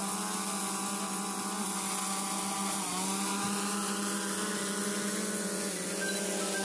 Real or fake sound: real